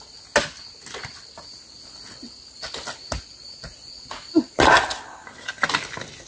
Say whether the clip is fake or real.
real